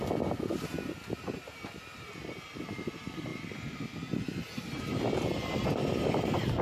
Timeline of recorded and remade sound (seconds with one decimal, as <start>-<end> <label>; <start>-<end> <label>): 0.0-6.6 recorded